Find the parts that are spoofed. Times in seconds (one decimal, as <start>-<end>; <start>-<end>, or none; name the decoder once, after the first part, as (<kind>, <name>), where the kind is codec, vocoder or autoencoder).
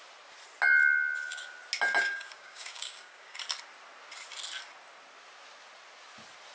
2.0-3.4 (codec, DAC)